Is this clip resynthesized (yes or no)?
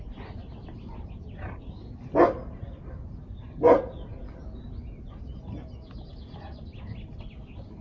no